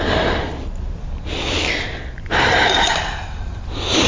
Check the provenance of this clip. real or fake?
real